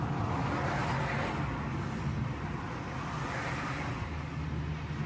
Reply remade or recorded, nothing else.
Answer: recorded